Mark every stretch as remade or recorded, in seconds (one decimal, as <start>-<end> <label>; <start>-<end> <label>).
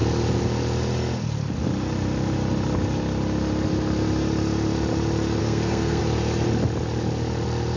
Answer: 0.0-5.4 recorded; 5.4-6.0 remade; 6.0-7.8 recorded